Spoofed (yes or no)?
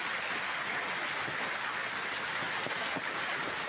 no